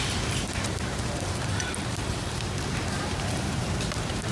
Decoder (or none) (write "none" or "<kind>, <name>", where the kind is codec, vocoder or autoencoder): vocoder, BigVGAN v2